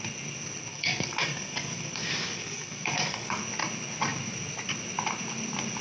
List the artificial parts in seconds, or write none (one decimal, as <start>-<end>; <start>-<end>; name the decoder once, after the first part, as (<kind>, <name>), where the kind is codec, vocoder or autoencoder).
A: 0.7-3.4 (codec, DAC)